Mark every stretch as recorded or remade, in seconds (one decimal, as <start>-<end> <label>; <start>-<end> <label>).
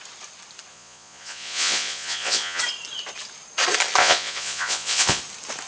0.0-0.7 recorded; 0.7-2.6 remade; 2.6-4.0 recorded; 4.0-5.2 remade; 5.2-5.7 recorded